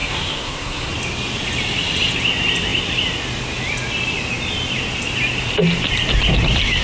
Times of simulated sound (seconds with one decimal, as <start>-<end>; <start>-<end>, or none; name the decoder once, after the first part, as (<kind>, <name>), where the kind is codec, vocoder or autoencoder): 0.0-0.9 (codec, SNAC)